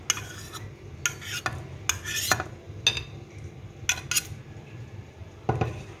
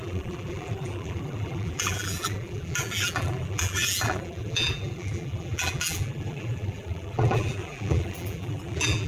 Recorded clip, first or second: first